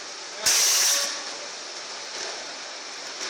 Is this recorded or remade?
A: recorded